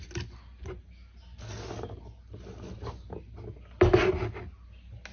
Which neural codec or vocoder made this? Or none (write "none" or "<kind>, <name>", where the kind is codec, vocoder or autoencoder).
none